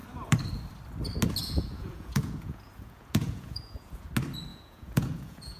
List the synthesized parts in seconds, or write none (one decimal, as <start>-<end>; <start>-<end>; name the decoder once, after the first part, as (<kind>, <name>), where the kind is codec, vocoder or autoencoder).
1.4-4.1 (vocoder, Vocos); 4.5-5.6